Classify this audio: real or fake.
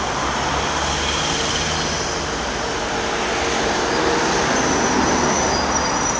real